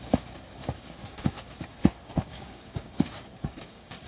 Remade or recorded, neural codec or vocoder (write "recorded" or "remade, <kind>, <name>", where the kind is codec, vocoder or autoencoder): remade, codec, DAC